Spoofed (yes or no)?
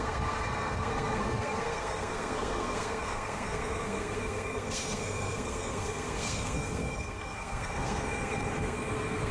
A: yes